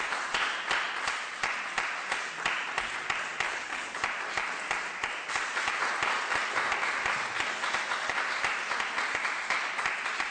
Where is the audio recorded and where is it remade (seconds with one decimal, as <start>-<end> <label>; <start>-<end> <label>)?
0.0-3.5 recorded; 3.5-4.0 remade; 4.0-10.3 recorded